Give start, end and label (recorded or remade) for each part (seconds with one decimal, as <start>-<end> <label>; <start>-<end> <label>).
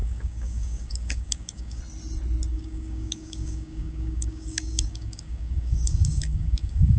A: 0.0-1.8 remade; 1.8-2.5 recorded; 2.5-7.0 remade